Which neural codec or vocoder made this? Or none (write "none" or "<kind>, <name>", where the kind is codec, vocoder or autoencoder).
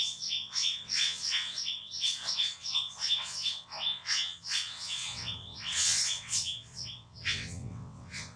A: vocoder, WaveNeXt